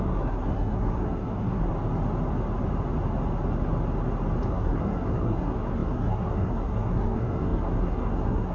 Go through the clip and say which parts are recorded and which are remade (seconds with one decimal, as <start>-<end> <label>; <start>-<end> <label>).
0.0-1.7 remade; 1.7-4.5 recorded; 4.5-8.5 remade